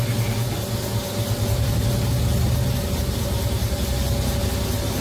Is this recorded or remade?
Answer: recorded